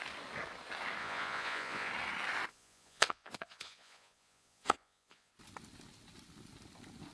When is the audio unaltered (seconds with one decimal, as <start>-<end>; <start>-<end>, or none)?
0.0-1.0; 1.9-2.5; 5.3-7.1